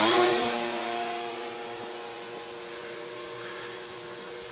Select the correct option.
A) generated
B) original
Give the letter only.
A